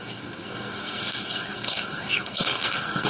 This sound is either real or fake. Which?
fake